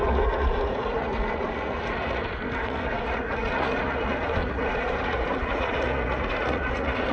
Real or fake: fake